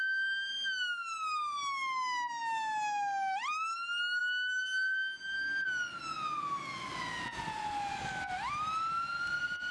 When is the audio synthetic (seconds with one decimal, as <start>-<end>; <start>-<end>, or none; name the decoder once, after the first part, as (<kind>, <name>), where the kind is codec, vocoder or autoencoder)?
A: none